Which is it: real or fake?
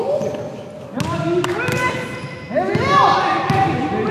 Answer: real